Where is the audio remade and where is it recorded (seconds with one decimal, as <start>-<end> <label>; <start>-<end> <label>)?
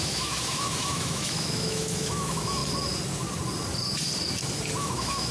0.0-2.6 remade; 2.6-4.8 recorded; 4.8-5.3 remade